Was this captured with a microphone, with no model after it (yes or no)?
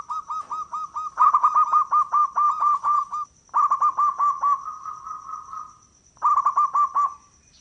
yes